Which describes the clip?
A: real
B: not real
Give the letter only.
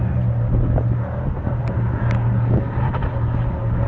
A